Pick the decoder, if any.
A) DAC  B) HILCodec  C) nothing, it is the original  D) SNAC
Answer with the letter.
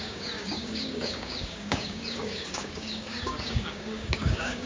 A